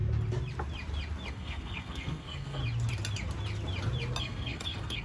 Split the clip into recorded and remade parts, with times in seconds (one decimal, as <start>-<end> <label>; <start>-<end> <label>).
0.0-1.3 recorded; 1.3-2.6 remade; 2.6-4.2 recorded; 4.2-5.0 remade